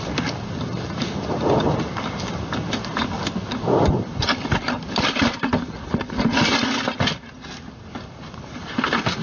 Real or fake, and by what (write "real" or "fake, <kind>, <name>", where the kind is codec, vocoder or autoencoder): real